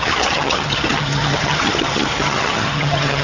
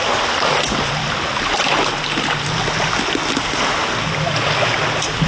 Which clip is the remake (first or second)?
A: first